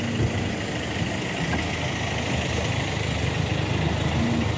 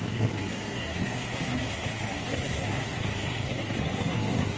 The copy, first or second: second